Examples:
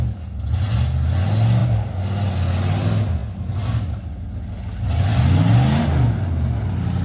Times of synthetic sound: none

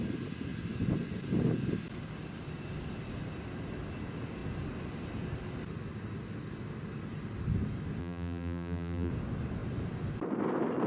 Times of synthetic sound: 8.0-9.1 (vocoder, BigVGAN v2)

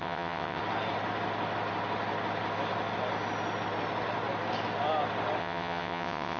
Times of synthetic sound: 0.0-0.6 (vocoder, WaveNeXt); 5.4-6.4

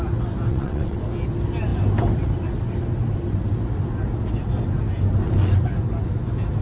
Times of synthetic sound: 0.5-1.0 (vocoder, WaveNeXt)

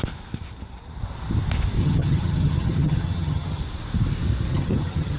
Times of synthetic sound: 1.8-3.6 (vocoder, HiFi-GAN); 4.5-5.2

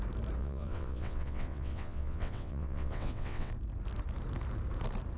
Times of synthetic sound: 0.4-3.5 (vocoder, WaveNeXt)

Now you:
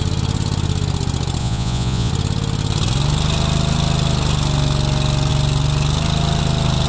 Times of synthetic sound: 1.4-2.1 (vocoder, Vocos)

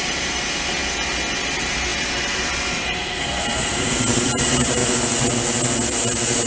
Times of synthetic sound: 0.0-0.8 (vocoder, BigVGAN v2); 1.4-4.8; 6.0-6.5